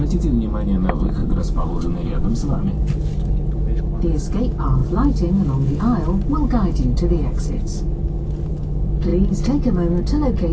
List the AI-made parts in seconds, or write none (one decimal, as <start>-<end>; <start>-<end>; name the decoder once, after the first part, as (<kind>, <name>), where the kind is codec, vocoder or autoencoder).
1.2-2.8 (vocoder, BigVGAN v2)